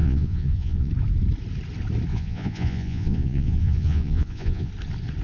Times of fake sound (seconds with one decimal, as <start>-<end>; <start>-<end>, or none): 0.0-0.9; 2.1-4.7